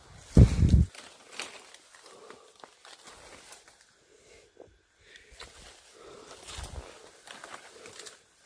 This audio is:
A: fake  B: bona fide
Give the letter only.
B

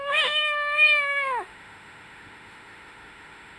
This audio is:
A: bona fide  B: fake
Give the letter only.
B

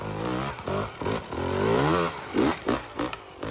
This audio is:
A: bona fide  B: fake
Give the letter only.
A